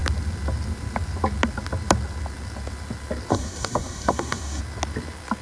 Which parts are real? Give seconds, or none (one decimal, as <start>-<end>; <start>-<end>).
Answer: 0.0-3.3; 4.6-5.4